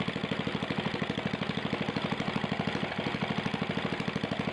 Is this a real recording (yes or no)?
yes